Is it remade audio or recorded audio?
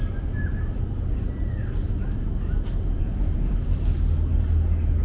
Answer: recorded